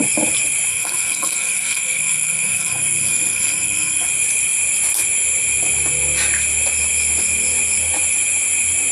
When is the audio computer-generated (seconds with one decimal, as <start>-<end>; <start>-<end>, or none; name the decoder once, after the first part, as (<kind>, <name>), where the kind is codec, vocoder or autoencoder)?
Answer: 0.7-4.1 (codec, SNAC)

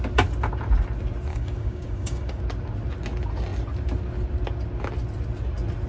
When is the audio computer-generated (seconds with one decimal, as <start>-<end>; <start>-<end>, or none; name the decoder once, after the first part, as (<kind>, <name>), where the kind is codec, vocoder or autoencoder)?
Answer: 1.3-2.4 (codec, DAC)

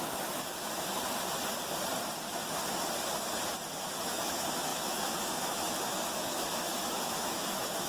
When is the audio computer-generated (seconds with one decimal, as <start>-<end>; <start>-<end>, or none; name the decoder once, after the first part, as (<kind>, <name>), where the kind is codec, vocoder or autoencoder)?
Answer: 0.0-0.9 (autoencoder, DAC-VAE); 4.0-7.9

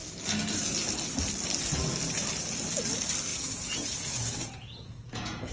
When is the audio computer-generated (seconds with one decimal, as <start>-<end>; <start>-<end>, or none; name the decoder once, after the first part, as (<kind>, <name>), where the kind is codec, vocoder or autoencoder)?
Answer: 3.3-5.5 (vocoder, Vocos)

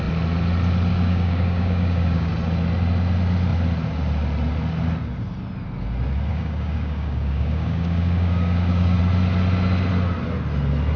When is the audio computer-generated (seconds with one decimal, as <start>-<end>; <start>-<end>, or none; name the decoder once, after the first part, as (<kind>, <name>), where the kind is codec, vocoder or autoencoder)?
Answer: 0.9-2.3 (codec, DAC); 6.3-9.0

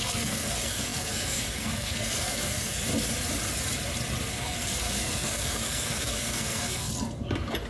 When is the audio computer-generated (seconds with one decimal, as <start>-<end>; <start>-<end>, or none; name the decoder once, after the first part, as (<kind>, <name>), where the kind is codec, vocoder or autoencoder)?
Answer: 0.0-2.9 (codec, SNAC); 4.3-6.9

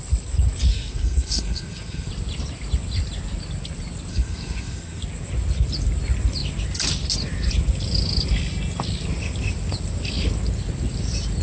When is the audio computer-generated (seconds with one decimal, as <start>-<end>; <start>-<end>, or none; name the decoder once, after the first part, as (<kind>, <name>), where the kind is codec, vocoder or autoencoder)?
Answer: 0.7-2.1 (codec, SNAC); 4.1-5.0